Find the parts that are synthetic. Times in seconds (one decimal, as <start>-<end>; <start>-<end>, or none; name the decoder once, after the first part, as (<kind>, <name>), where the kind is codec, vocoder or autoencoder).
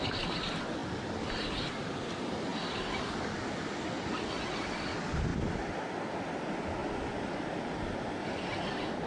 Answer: none